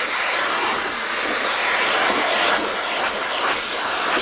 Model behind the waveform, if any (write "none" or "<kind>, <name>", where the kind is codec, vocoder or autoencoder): none